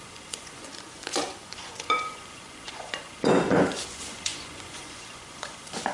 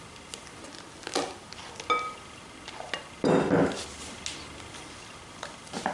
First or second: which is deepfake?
first